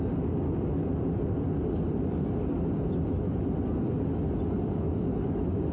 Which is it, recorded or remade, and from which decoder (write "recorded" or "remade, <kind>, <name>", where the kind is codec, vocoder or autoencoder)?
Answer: recorded